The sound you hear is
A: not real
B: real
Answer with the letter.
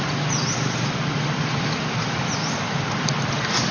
B